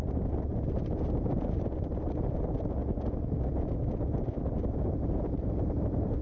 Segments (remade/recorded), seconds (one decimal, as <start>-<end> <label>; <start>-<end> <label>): 0.0-2.8 remade; 2.8-4.0 recorded; 4.0-6.2 remade